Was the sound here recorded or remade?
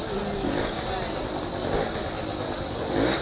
recorded